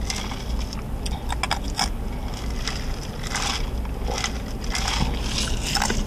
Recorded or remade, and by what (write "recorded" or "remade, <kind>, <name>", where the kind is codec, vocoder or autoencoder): recorded